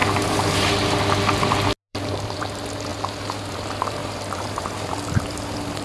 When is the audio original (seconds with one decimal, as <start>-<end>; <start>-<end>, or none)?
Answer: 1.0-1.9; 2.4-4.0; 4.7-5.8

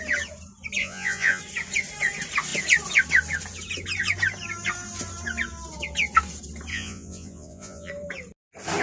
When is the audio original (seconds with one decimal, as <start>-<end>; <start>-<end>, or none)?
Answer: 0.0-0.8; 1.4-6.7; 7.9-8.8